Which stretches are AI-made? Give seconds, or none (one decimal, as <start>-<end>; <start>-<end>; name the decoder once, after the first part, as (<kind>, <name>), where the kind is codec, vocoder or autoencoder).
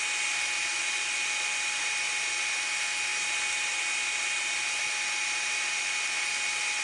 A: none